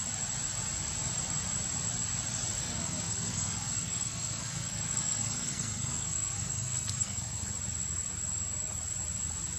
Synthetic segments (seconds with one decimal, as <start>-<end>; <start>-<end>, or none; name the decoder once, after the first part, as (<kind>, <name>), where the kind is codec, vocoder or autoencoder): 2.6-7.5 (codec, SNAC)

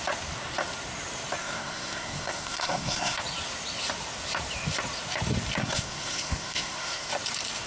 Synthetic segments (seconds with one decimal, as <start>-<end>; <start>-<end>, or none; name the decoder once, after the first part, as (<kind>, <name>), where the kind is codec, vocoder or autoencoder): 1.4-3.2 (codec, SNAC); 5.6-7.1

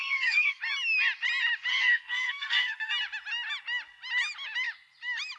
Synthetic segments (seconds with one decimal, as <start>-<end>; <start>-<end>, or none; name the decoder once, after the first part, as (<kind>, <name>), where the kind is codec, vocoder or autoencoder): 0.0-0.6 (codec, SNAC); 1.7-2.9

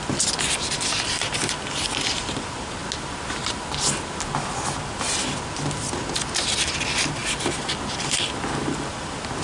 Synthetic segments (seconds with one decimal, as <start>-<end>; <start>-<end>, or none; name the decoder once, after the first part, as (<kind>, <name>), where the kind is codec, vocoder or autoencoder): none

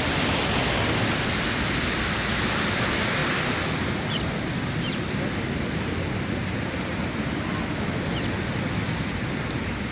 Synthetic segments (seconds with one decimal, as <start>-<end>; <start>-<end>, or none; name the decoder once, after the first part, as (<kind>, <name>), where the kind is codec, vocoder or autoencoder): none

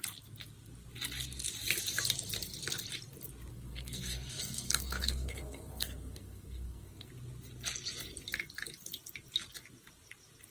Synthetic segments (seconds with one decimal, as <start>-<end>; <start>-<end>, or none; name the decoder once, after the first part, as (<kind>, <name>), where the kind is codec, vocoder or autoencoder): 3.5-7.1 (codec, SNAC)